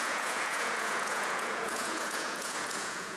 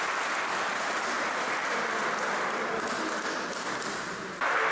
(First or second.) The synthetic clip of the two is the first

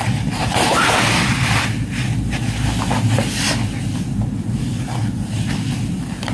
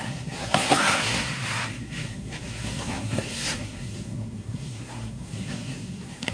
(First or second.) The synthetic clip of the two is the second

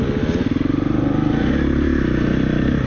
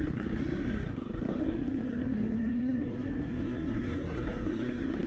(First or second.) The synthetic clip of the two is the second